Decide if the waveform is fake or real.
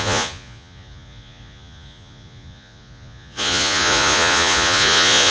fake